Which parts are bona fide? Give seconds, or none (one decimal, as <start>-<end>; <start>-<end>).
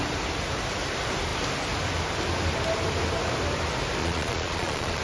0.0-4.0